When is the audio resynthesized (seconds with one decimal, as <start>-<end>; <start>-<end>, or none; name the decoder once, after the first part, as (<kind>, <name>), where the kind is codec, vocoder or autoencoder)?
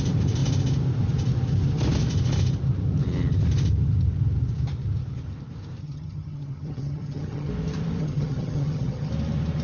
5.8-7.5 (vocoder, HiFi-GAN); 8.0-9.1